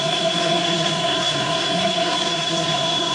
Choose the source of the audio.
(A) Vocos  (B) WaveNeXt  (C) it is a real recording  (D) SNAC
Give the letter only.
D